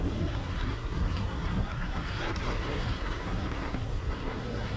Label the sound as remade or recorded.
remade